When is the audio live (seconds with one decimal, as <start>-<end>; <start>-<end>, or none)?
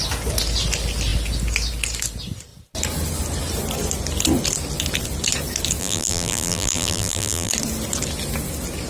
0.0-5.8; 7.5-8.9